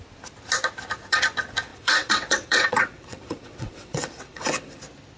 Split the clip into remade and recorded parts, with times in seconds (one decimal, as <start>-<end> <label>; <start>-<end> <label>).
0.0-1.7 recorded; 1.7-4.8 remade; 4.8-5.2 recorded